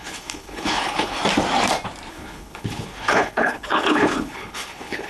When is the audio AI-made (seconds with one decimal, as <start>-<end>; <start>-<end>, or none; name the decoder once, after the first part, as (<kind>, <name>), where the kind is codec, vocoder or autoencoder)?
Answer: 0.0-1.2 (codec, HILCodec); 2.1-5.1